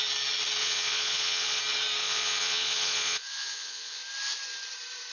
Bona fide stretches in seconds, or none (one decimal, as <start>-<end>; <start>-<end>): 0.0-0.6; 1.6-2.0; 4.0-5.1